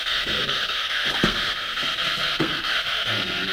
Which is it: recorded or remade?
remade